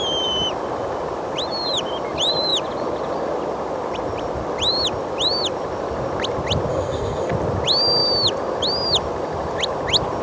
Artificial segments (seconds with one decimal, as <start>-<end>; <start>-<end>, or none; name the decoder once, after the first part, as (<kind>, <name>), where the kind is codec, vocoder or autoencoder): 6.7-7.3 (codec, SNAC)